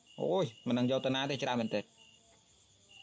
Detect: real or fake real